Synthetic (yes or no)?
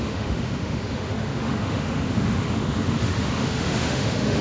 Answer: yes